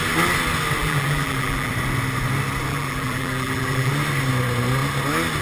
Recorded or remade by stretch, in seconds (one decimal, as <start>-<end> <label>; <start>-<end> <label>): 0.0-0.8 recorded; 0.8-1.7 remade; 1.7-2.7 recorded; 2.7-3.9 remade; 3.9-5.4 recorded